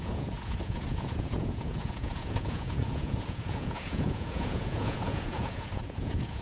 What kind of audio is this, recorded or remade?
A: remade